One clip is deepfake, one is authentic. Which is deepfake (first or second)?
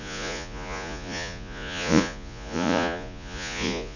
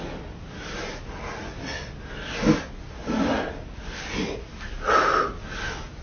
first